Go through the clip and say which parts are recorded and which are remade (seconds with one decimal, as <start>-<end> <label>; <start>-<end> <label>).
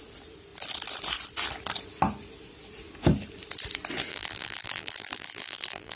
0.0-4.1 recorded; 4.1-6.0 remade